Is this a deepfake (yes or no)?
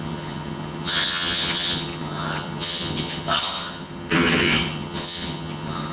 yes